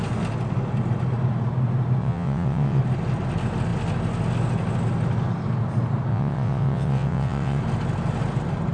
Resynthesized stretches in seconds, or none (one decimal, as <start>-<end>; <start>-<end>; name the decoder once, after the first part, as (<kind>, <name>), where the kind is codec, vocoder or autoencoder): 2.0-2.8 (vocoder, WaveNeXt); 6.1-7.6